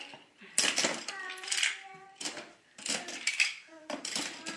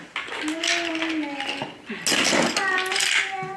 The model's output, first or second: first